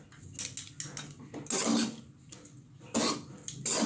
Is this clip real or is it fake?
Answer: real